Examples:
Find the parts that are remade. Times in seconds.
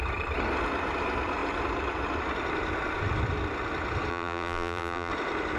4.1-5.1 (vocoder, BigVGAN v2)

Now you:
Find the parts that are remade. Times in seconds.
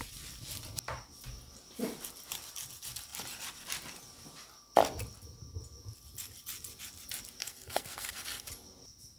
7.4-8.5 (codec, SNAC)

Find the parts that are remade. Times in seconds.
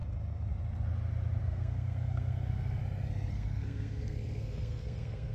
1.4-2.8 (codec, SNAC); 3.3-5.3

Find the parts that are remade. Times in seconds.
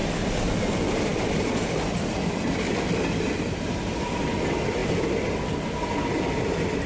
none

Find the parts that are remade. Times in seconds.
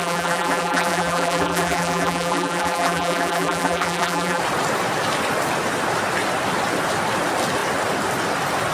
0.0-4.4 (vocoder, BigVGAN v2)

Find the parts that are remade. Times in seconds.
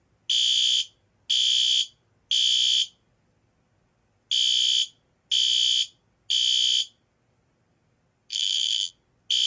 8.3-8.9 (vocoder, BigVGAN v2)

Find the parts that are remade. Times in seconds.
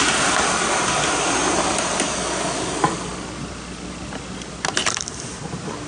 none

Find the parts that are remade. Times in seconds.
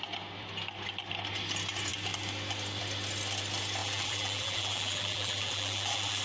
3.8-6.2 (vocoder, BigVGAN v2)